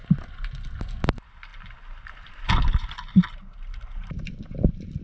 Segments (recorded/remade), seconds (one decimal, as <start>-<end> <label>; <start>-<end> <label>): 0.0-5.0 recorded